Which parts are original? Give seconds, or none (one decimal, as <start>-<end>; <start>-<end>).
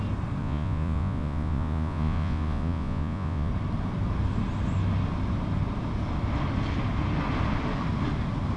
0.0-0.4; 3.5-8.6